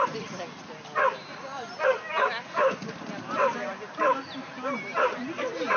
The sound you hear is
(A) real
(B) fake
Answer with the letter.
A